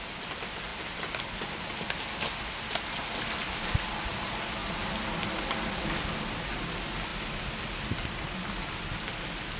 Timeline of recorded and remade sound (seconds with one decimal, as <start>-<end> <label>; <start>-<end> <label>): 0.0-9.6 recorded